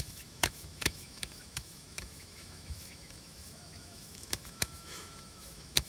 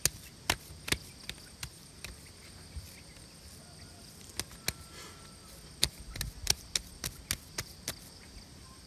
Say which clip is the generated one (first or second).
first